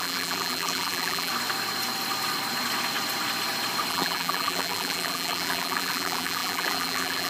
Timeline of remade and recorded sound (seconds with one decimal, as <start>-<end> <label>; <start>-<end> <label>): 0.0-1.3 remade; 1.3-3.9 recorded; 3.9-7.3 remade